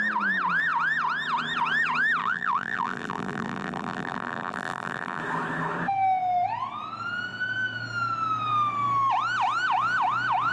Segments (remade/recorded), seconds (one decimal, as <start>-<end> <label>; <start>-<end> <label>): 0.0-2.2 recorded; 2.2-5.2 remade; 5.2-10.5 recorded